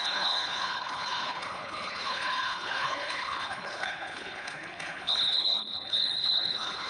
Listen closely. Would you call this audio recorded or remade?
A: remade